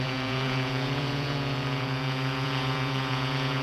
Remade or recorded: remade